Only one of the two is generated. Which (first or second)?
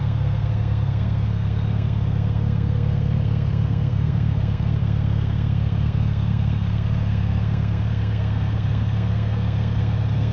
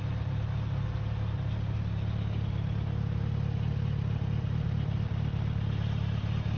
first